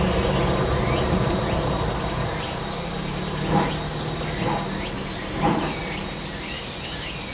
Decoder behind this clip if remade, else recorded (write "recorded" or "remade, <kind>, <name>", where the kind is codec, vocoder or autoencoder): recorded